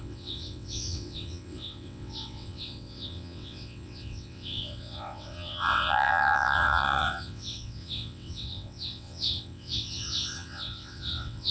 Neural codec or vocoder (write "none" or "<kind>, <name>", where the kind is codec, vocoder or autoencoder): vocoder, WaveNeXt